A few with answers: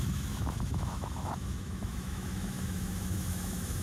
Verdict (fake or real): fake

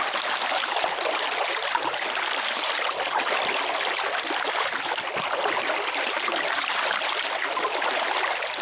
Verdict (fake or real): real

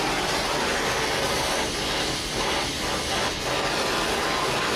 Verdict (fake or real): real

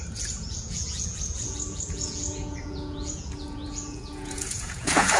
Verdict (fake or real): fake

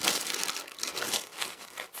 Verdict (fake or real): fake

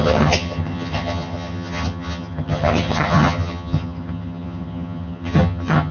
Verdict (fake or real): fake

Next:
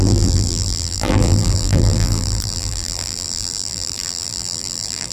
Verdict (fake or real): fake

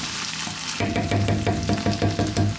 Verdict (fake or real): real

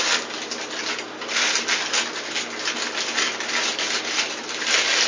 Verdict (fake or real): real